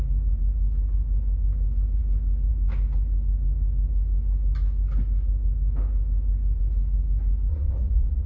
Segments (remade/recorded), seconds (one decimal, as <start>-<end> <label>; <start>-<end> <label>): 0.0-7.5 recorded; 7.5-8.3 remade